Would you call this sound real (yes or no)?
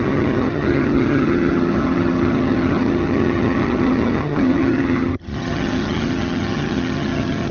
no